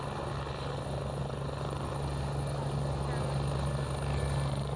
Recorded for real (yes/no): yes